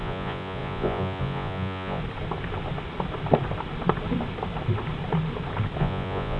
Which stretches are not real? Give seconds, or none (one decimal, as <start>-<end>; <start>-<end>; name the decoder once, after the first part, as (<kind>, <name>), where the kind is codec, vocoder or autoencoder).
0.0-2.0 (vocoder, Vocos); 5.8-6.4